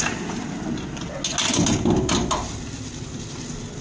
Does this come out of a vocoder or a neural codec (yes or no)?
no